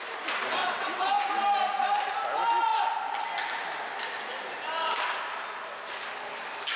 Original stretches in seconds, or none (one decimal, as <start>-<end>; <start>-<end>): 0.0-0.6; 1.2-6.8